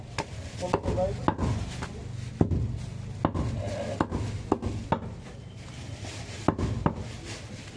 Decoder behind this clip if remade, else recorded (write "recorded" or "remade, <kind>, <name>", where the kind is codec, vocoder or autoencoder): recorded